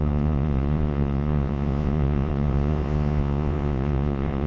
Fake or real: fake